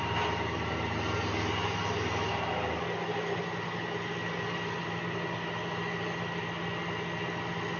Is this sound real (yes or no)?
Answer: yes